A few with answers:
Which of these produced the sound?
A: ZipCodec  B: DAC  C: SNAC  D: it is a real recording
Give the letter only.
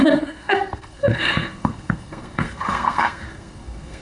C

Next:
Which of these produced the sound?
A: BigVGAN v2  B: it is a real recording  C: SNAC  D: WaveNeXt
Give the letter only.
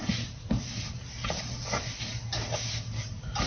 B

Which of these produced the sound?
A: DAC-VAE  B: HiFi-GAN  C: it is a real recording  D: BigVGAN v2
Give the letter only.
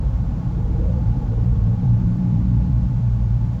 D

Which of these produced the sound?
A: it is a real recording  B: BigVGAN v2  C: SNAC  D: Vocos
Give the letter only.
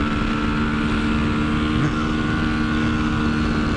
A